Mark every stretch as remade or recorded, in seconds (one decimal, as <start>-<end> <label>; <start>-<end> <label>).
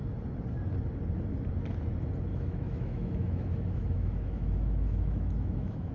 0.0-2.3 recorded; 2.3-5.9 remade